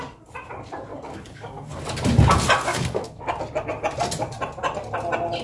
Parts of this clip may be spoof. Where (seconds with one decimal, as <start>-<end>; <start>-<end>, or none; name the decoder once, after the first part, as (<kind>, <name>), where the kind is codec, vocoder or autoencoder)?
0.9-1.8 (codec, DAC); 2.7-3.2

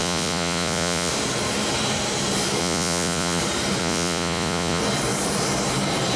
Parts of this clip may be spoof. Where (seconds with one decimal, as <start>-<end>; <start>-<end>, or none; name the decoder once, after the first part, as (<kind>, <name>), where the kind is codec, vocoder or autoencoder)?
0.0-1.1 (vocoder, Vocos); 2.6-3.4; 3.8-4.8

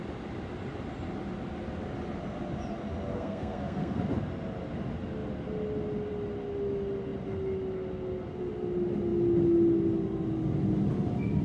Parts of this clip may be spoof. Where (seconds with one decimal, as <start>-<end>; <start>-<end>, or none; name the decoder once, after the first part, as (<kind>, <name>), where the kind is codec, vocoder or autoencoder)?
3.1-4.0 (codec, SNAC)

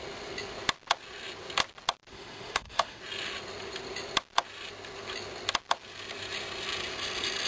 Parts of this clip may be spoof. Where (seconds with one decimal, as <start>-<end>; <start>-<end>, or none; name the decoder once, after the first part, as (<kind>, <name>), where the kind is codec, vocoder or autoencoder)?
2.1-3.0 (autoencoder, DAC-VAE)

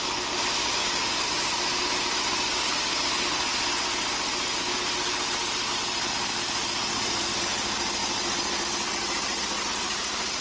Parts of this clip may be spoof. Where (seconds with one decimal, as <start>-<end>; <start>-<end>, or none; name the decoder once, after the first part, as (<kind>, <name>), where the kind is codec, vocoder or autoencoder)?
0.6-1.2 (codec, DAC); 2.5-3.1

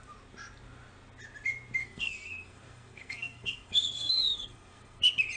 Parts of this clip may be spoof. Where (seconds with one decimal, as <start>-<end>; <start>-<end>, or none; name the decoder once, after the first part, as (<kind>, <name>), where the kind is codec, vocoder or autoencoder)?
1.8-5.0 (codec, SNAC)

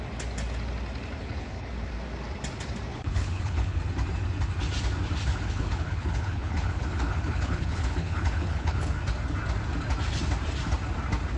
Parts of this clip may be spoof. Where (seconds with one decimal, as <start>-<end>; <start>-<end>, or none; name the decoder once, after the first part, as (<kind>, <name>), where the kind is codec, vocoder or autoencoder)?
1.2-1.7 (codec, HILCodec); 2.9-3.8; 5.3-9.0

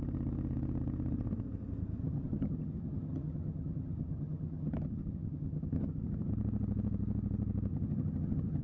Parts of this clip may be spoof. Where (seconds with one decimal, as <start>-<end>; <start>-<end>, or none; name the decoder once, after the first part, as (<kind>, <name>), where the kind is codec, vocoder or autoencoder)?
2.0-6.3 (vocoder, HiFi-GAN); 7.7-8.6